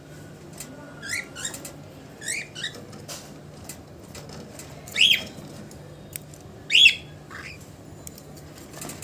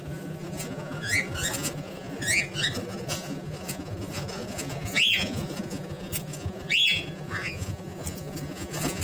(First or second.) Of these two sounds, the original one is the first